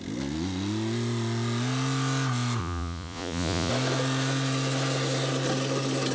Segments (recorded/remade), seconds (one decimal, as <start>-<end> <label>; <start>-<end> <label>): 0.0-2.6 recorded; 2.6-3.7 remade; 3.7-6.1 recorded